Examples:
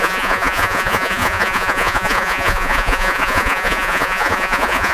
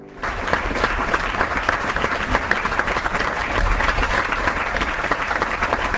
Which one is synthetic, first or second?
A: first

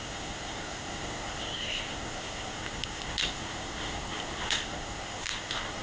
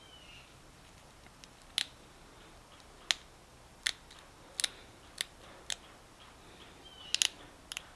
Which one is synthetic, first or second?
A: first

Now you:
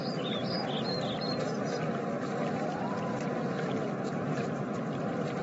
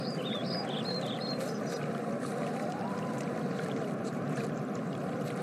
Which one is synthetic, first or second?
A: second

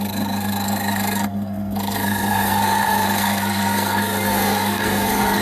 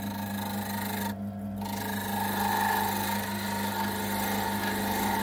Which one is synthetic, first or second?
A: first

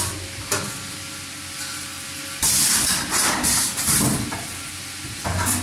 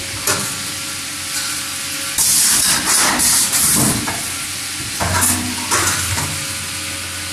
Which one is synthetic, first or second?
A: first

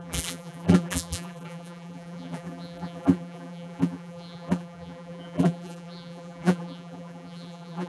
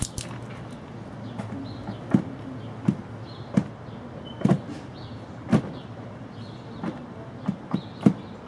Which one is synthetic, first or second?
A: first